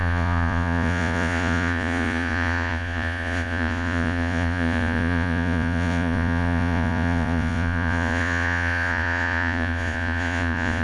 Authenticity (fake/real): fake